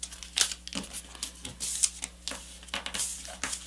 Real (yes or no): yes